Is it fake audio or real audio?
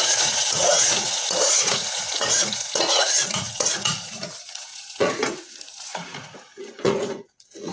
fake